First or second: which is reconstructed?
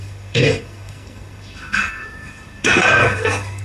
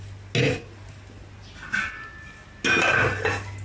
first